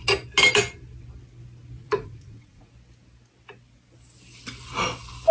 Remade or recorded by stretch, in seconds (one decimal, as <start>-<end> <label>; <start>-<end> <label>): 0.0-1.8 recorded; 1.8-2.7 remade; 2.7-5.3 recorded